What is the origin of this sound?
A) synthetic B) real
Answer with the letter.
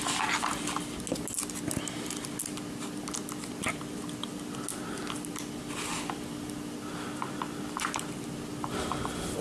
B